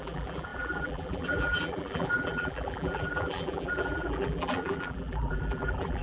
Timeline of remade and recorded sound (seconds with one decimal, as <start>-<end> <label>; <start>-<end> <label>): 0.0-6.0 remade